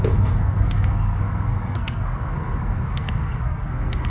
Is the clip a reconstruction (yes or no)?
yes